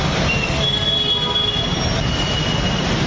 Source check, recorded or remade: recorded